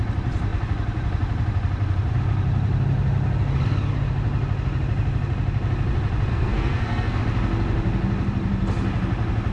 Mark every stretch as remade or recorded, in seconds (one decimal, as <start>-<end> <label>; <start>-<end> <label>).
0.0-6.3 recorded; 6.3-7.2 remade; 7.2-9.5 recorded

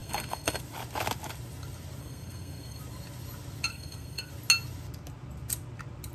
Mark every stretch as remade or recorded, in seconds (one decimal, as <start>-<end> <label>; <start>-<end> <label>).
0.0-0.6 remade; 0.6-2.0 recorded; 2.0-2.8 remade; 2.8-3.7 recorded; 3.7-4.3 remade; 4.3-6.1 recorded

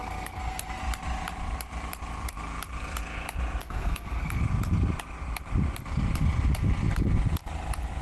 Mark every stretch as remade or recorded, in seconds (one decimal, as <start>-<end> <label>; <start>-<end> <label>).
0.0-0.8 remade; 0.8-3.6 recorded; 3.6-4.4 remade; 4.4-8.0 recorded

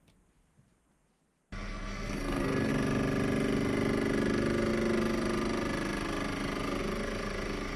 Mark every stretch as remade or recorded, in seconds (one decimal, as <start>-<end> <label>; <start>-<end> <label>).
0.0-1.7 recorded; 1.7-2.7 remade; 2.7-7.8 recorded

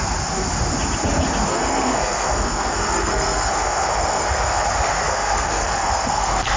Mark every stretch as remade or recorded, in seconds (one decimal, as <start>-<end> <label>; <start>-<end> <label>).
0.0-1.5 recorded; 1.5-4.6 remade; 4.6-5.1 recorded; 5.1-6.6 remade

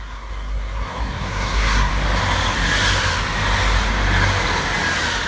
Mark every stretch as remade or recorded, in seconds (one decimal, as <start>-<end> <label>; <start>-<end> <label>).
0.0-1.9 remade; 1.9-5.3 recorded

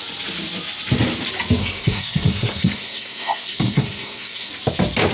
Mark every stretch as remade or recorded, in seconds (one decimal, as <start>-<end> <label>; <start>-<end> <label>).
0.0-1.6 recorded; 1.6-4.5 remade; 4.5-5.1 recorded